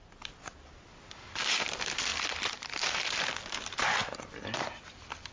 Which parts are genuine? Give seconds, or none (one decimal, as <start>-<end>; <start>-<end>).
0.0-2.1; 3.4-4.0